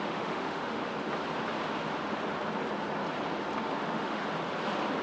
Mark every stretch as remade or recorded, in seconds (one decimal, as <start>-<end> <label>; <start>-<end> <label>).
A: 0.0-0.8 remade; 0.8-3.8 recorded; 3.8-4.2 remade; 4.2-5.0 recorded

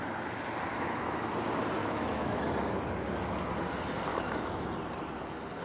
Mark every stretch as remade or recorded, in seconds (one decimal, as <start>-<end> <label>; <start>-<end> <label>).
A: 0.0-0.7 recorded; 0.7-1.2 remade; 1.2-1.8 recorded; 1.8-2.4 remade; 2.4-4.1 recorded; 4.1-4.6 remade; 4.6-5.6 recorded

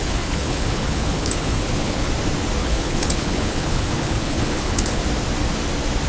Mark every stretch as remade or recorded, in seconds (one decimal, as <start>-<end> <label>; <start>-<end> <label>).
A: 0.0-2.1 remade; 2.1-2.6 recorded; 2.6-5.0 remade; 5.0-6.1 recorded

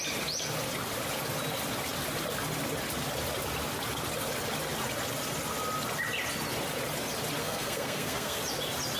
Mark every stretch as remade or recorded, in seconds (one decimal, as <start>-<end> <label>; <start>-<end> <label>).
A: 0.0-7.4 recorded; 7.4-8.4 remade; 8.4-9.0 recorded

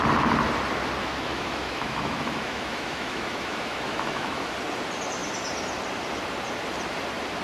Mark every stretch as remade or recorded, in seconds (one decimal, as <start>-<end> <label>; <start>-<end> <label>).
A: 0.0-1.0 recorded; 1.0-4.5 remade; 4.5-7.4 recorded